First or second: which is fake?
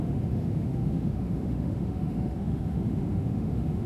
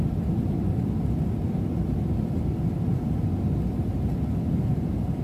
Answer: first